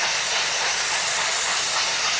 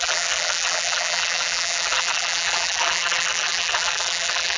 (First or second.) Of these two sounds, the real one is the first